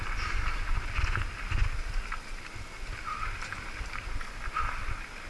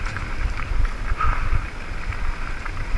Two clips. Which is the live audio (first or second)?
first